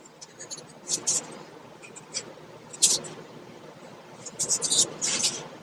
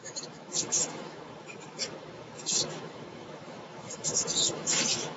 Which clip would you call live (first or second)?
first